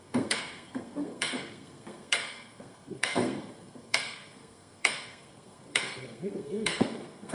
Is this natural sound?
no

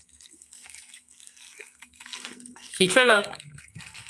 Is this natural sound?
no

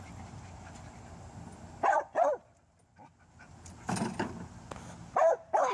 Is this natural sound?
yes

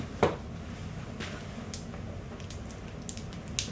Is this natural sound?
yes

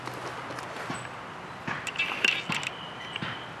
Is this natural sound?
yes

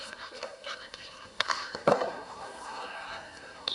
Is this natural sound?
no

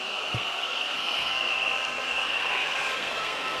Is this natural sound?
no